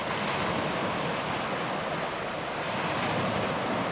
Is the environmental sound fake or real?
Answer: real